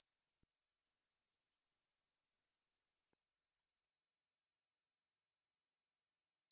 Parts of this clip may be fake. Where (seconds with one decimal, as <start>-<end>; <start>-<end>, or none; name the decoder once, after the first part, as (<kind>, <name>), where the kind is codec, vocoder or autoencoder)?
0.0-3.9 (codec, HILCodec)